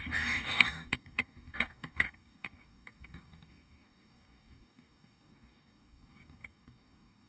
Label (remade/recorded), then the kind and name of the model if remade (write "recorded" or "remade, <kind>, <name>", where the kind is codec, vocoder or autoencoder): remade, codec, DAC